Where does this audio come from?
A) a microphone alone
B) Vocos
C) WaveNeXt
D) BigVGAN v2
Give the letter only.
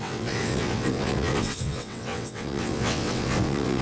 C